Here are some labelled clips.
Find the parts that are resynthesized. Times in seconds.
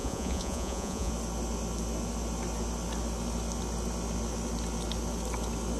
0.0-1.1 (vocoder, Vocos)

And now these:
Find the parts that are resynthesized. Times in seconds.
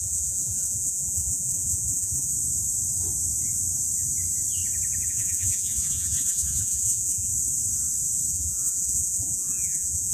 0.0-2.3 (vocoder, Vocos); 5.1-7.3; 8.3-10.1